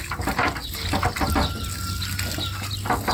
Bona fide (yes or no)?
yes